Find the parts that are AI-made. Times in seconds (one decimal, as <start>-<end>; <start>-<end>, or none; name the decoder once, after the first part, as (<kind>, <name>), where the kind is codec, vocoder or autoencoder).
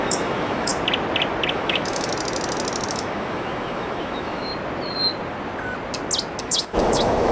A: 0.0-0.7 (autoencoder, DAC-VAE); 1.5-2.1; 2.9-4.5; 6.4-7.3